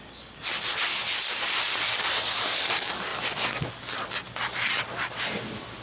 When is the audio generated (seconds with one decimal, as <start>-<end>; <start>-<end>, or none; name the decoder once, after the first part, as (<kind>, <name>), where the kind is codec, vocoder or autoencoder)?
0.0-3.1 (vocoder, BigVGAN v2); 4.8-5.8